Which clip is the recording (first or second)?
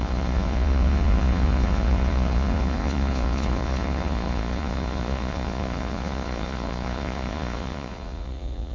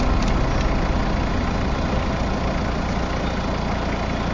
second